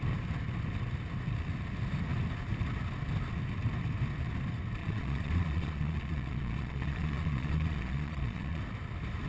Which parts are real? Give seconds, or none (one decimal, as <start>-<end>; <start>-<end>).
0.0-4.8; 8.6-9.3